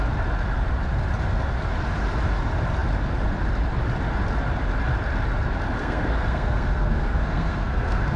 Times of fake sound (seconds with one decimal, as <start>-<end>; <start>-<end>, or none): 5.8-8.2